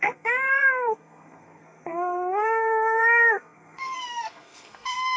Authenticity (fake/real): fake